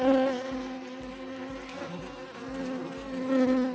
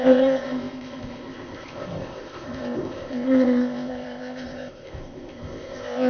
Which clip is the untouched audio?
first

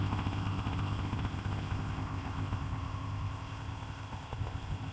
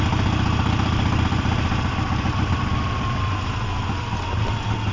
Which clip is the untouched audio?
second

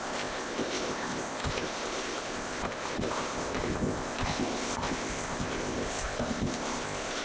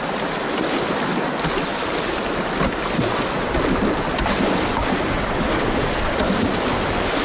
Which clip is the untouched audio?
second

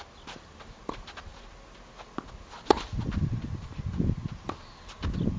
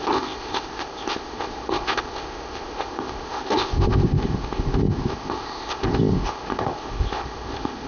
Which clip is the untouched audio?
first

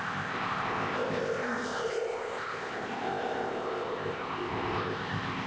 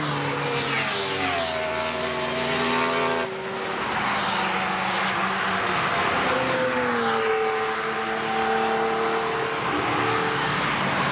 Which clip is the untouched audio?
second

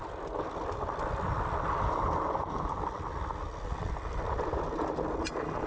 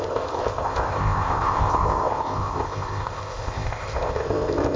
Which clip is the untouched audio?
first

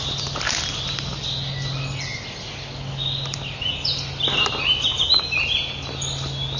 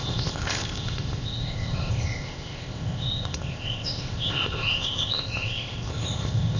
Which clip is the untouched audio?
first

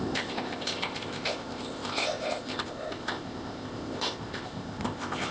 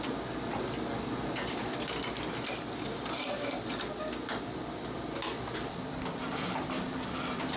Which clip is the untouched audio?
second